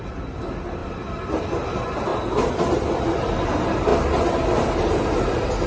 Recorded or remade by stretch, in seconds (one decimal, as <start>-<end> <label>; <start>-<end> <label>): 0.0-0.8 recorded; 0.8-1.4 remade; 1.4-5.7 recorded